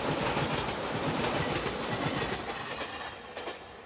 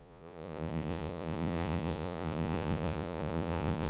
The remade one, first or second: second